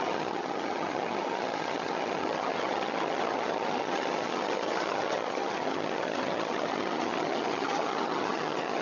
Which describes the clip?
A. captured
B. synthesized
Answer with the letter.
B